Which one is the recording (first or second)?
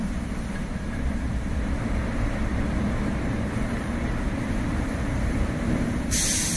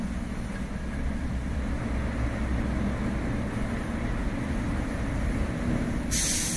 second